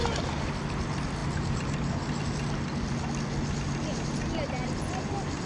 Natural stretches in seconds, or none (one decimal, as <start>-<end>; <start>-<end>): 0.0-5.5